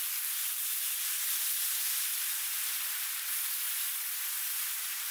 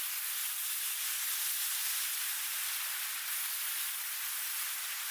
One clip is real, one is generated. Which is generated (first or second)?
first